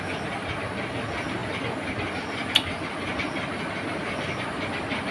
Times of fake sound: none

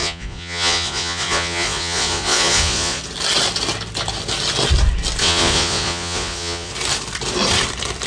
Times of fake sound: 0.0-3.0 (vocoder, Vocos); 5.2-6.7

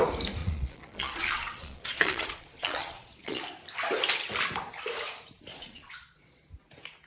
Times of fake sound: 0.4-3.4 (vocoder, Vocos); 5.5-6.5

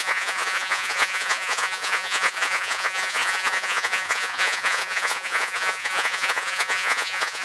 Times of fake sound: 0.0-7.4 (vocoder, Vocos)

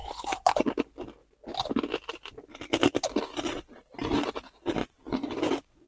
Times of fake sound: 0.0-0.7 (vocoder, Vocos); 4.8-5.9

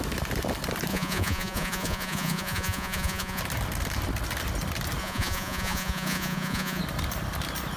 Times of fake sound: 0.9-3.4 (vocoder, Vocos); 5.0-6.8

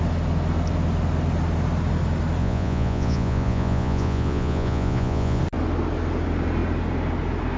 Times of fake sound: 2.4-5.4 (vocoder, Vocos)

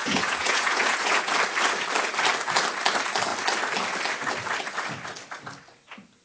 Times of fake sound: 0.0-1.3 (vocoder, Vocos)